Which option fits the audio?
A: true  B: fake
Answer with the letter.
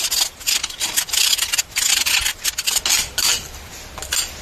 A